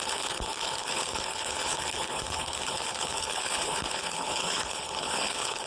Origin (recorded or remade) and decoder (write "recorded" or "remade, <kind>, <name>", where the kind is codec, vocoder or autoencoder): remade, codec, HILCodec